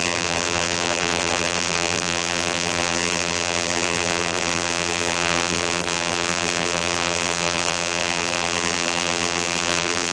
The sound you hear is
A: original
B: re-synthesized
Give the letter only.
B